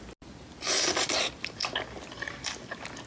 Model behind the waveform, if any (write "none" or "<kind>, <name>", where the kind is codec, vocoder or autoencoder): none